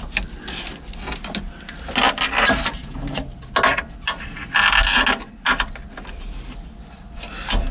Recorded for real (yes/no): yes